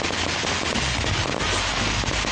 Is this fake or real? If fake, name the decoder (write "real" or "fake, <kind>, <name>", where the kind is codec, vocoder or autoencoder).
real